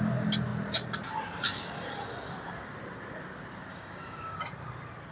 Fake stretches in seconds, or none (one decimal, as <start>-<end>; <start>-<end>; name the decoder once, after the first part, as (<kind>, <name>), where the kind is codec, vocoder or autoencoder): 3.7-4.4 (codec, DAC)